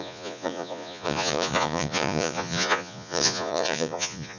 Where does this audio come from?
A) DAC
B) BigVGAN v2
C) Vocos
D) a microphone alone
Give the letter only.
C